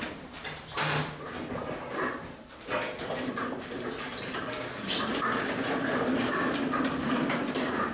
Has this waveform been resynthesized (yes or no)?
no